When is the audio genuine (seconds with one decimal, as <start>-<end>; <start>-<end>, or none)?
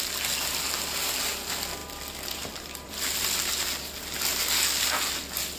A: 0.0-1.8; 2.9-5.6